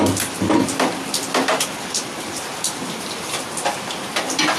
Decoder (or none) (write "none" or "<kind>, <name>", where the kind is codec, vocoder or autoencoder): none